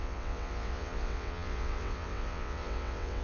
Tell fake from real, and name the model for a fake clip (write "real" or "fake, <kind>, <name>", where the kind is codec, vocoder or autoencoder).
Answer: fake, vocoder, WaveNeXt